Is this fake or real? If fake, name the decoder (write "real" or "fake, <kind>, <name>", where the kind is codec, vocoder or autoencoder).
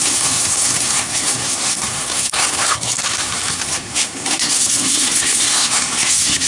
fake, codec, SNAC